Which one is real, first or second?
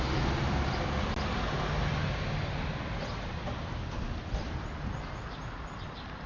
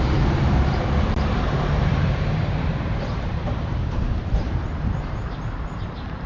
first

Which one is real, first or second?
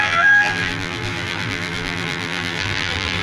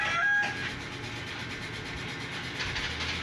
second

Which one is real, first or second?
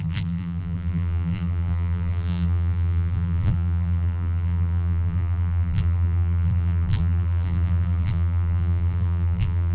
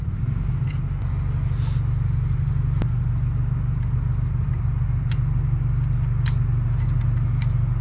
second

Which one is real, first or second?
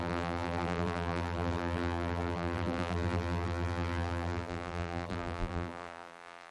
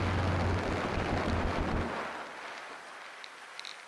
second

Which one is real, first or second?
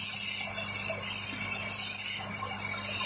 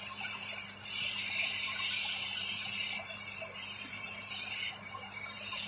first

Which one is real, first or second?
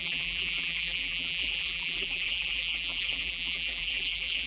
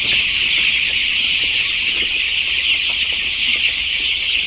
second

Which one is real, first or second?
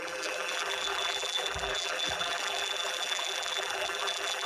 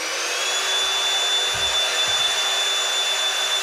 second